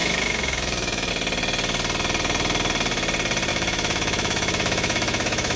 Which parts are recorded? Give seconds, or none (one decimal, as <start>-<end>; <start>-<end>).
1.1-3.5